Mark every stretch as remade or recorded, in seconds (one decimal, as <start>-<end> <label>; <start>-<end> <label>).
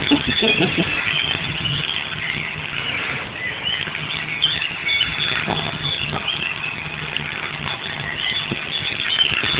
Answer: 0.0-0.5 remade; 0.5-1.0 recorded; 1.0-2.8 remade; 2.8-3.7 recorded; 3.7-9.6 remade